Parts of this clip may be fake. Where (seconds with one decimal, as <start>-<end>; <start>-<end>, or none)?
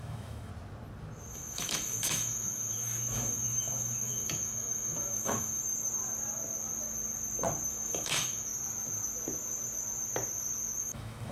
0.0-0.5; 1.3-5.6; 7.7-8.5; 10.8-11.3